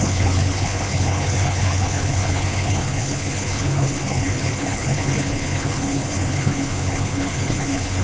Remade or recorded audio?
remade